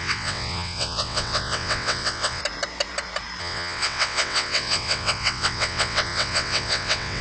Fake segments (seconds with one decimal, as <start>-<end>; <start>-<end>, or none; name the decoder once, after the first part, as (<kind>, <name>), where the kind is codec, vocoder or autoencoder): 0.0-2.4 (vocoder, WaveNeXt); 3.4-7.2